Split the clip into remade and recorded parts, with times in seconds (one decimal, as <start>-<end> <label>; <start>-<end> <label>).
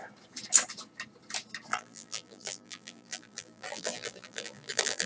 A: 0.0-1.7 recorded; 1.7-5.1 remade